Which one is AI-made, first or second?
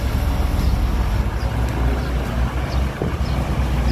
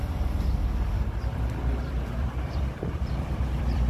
second